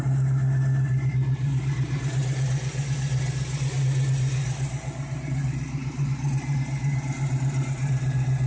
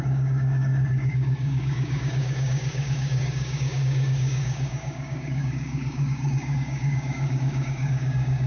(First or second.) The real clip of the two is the first